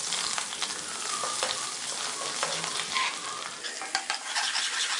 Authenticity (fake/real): real